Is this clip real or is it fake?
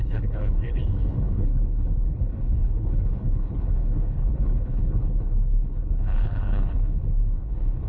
fake